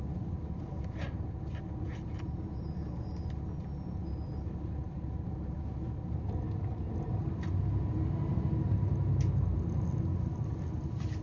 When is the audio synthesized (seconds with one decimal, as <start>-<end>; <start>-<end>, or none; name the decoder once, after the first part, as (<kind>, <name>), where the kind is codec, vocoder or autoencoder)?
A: none